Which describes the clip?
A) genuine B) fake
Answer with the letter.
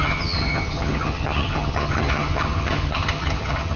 B